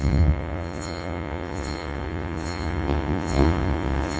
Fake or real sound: fake